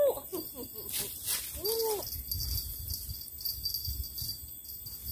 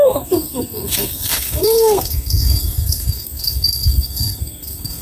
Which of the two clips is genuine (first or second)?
first